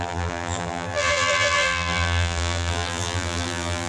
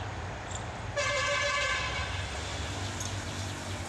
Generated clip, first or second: first